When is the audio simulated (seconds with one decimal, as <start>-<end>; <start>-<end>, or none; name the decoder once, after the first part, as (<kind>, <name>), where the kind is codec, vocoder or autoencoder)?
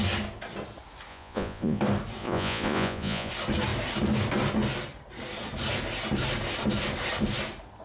1.1-1.8 (vocoder, Vocos); 2.2-3.3